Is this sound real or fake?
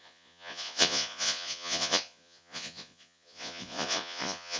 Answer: fake